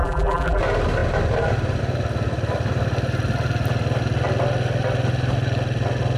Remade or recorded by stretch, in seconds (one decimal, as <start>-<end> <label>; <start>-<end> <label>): 0.0-0.6 remade; 0.6-6.2 recorded